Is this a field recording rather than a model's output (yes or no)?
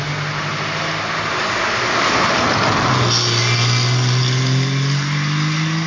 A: yes